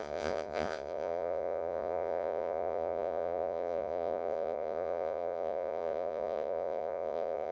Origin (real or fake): fake